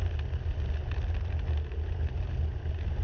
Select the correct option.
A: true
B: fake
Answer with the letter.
A